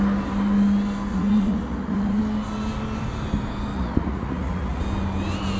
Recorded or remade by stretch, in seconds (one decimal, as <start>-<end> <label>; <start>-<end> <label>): 0.0-1.1 recorded; 1.1-2.2 remade; 2.2-3.7 recorded; 3.7-4.8 remade; 4.8-5.6 recorded